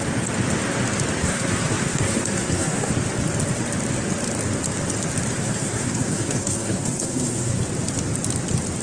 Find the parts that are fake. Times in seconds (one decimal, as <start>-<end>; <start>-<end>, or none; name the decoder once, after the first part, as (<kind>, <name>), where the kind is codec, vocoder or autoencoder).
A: 1.2-2.9 (codec, SNAC); 5.4-7.6